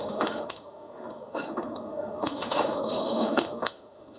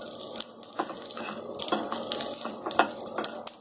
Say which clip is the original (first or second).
second